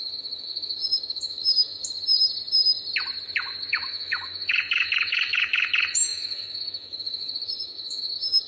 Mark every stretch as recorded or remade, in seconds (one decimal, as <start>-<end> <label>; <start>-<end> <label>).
0.0-1.8 remade; 1.8-3.7 recorded; 3.7-8.5 remade